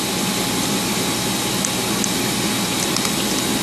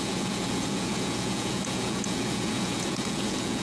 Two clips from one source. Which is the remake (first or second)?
second